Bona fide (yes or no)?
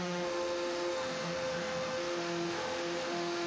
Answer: no